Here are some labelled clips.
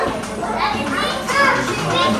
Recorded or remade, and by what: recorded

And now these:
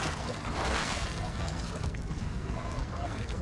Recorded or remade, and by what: remade, codec, SNAC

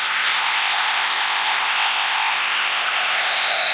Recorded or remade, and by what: remade, codec, ZipCodec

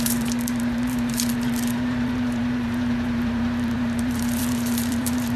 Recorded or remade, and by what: remade, vocoder, BigVGAN v2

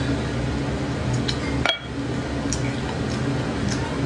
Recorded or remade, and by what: recorded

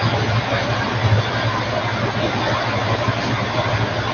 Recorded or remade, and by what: recorded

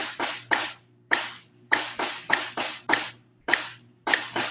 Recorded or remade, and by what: remade, vocoder, BigVGAN v2